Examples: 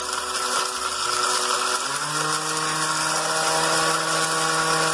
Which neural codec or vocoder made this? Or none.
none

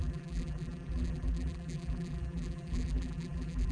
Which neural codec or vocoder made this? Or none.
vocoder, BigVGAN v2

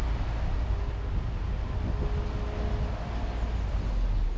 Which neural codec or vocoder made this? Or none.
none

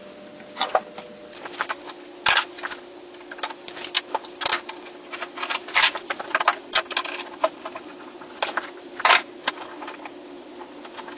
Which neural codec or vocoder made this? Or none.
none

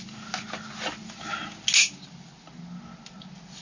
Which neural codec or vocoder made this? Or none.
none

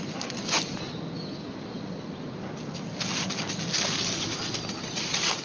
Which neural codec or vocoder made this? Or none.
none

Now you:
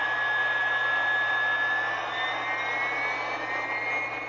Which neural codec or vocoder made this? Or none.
none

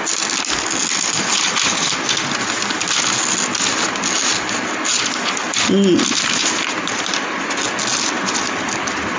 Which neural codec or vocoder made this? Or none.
none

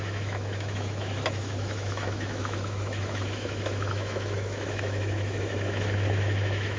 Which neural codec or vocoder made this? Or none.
autoencoder, DAC-VAE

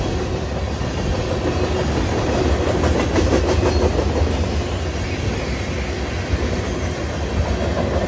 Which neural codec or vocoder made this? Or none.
none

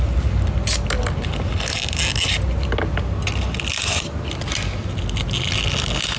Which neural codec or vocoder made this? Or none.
none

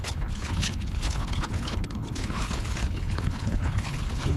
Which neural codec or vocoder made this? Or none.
codec, HILCodec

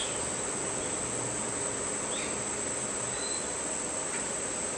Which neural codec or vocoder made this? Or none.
none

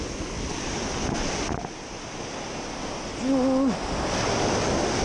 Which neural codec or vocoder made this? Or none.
none